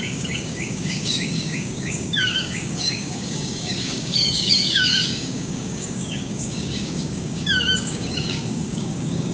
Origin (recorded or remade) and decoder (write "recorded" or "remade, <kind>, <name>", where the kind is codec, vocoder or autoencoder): remade, codec, DAC